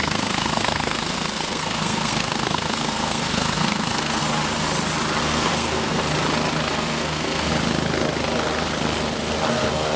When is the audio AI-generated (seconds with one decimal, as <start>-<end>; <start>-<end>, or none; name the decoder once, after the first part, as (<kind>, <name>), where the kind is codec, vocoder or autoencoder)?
0.0-4.2 (codec, SNAC); 5.2-6.0; 6.7-7.5; 9.5-10.0